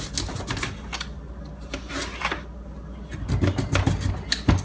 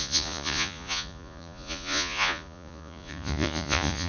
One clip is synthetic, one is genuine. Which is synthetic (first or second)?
second